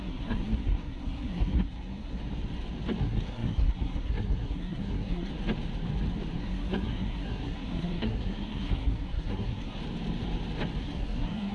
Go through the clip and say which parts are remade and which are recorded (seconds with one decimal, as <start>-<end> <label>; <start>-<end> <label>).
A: 0.0-2.2 remade; 2.2-3.0 recorded; 3.0-5.3 remade; 5.3-6.4 recorded; 6.4-9.8 remade; 9.8-10.8 recorded; 10.8-11.5 remade